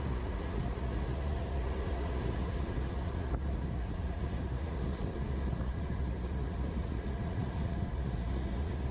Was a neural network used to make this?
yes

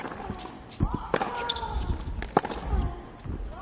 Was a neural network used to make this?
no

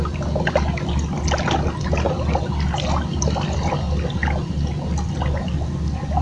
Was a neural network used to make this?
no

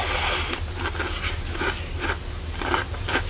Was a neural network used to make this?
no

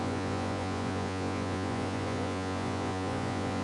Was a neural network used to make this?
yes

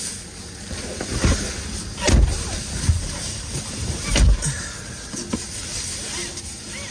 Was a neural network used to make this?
no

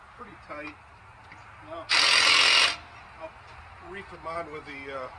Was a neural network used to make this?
no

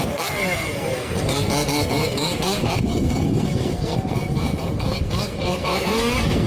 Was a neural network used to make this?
yes